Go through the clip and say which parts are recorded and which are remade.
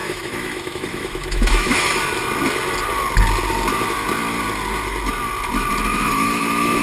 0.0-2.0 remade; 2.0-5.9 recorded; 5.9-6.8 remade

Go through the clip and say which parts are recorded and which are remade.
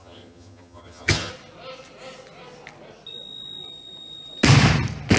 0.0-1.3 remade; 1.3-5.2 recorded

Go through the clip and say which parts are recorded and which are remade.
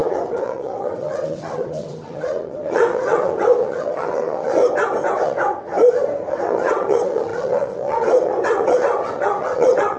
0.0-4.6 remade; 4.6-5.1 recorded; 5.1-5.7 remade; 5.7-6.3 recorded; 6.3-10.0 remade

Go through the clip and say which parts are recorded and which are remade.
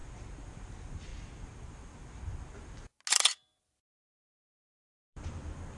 0.0-1.1 remade; 1.1-3.6 recorded; 3.6-5.8 remade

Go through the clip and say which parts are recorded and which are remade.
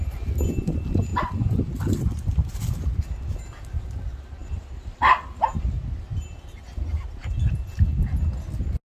0.0-4.4 recorded; 4.4-5.4 remade; 5.4-8.9 recorded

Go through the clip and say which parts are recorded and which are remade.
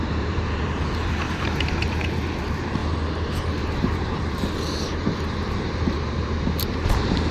0.0-2.8 remade; 2.8-3.8 recorded; 3.8-7.3 remade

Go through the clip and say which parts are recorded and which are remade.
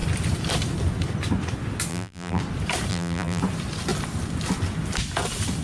0.0-1.9 recorded; 1.9-2.4 remade; 2.4-2.9 recorded; 2.9-3.4 remade; 3.4-5.6 recorded